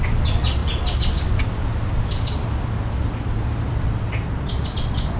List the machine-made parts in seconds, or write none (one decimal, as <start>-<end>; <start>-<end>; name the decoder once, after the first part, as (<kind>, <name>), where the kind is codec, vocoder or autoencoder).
none